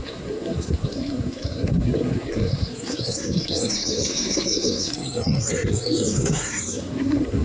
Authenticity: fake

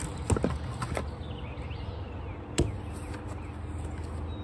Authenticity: real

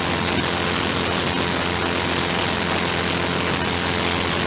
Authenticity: real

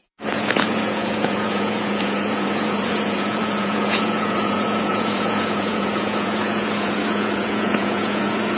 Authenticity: fake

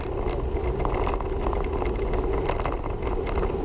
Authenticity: real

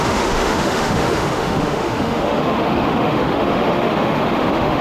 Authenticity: fake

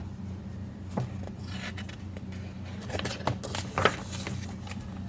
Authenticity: real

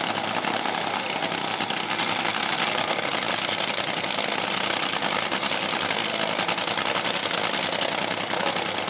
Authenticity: real